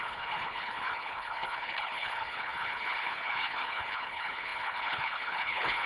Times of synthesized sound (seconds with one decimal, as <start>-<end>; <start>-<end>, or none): 0.0-5.9